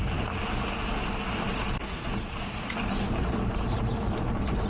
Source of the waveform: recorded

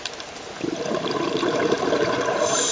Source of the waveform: remade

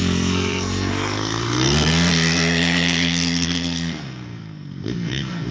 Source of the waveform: remade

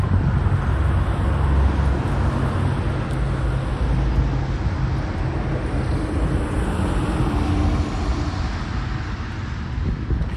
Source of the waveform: recorded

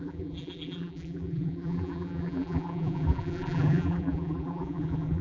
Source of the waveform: remade